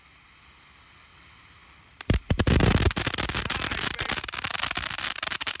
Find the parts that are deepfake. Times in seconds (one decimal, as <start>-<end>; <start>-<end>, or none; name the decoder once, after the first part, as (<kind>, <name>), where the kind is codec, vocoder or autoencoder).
none